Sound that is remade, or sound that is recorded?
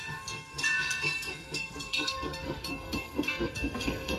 remade